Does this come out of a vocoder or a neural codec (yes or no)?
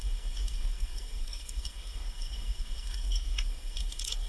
yes